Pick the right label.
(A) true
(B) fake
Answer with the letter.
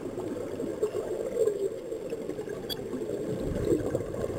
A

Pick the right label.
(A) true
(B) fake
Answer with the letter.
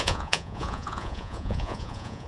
B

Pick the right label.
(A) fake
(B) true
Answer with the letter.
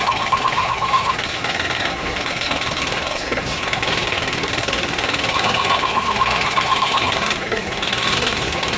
A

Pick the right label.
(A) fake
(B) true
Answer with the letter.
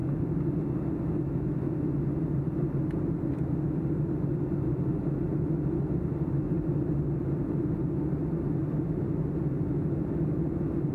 B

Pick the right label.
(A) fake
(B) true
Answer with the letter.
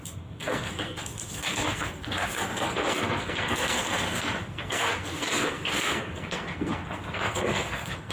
A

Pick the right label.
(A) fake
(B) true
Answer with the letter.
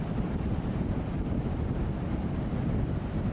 B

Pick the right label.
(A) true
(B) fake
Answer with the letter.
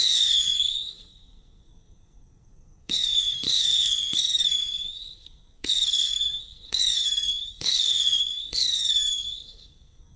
B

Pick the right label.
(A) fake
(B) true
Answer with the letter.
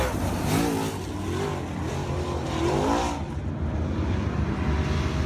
B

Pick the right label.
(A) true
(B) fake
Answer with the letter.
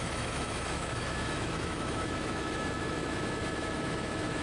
B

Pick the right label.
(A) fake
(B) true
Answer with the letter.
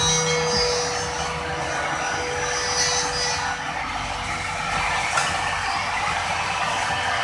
B